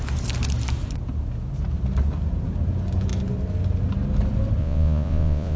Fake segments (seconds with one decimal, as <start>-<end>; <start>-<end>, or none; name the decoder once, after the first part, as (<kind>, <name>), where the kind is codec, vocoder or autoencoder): 4.6-5.6 (vocoder, Vocos)